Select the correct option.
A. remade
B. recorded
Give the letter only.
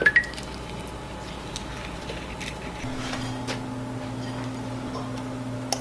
B